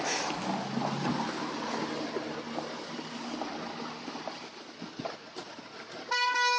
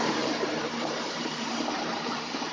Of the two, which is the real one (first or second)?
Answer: first